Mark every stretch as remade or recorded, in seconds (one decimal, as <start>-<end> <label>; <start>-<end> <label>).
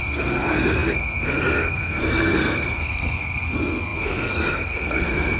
0.0-5.4 remade